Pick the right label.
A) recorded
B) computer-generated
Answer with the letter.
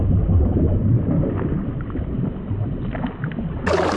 A